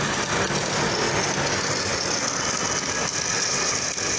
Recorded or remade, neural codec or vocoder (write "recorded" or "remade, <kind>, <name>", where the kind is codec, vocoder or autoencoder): recorded